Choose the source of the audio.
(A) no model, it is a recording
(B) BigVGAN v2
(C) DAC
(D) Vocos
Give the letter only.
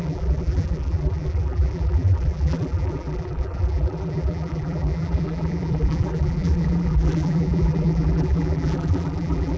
B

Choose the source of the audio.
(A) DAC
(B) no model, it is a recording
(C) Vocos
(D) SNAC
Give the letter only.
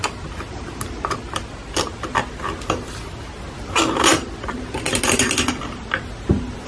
B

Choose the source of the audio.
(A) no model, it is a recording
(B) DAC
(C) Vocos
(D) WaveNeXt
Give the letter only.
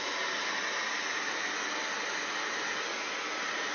A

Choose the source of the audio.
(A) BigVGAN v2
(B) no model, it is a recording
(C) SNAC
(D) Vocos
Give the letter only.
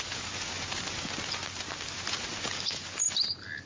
B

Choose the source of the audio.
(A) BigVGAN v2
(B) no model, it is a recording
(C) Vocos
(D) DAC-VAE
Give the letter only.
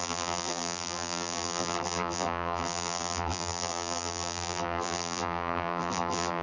A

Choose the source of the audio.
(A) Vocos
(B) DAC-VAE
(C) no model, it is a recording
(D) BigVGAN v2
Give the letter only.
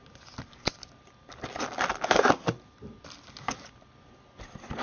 C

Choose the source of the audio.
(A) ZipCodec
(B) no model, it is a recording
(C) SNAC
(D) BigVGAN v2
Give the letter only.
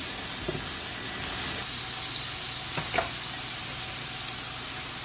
B